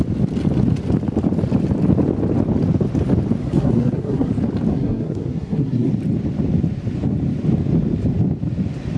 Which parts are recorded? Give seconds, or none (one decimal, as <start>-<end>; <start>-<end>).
0.0-3.4; 4.3-4.7; 5.9-9.0